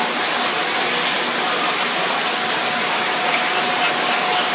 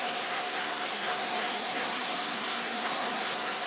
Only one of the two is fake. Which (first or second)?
second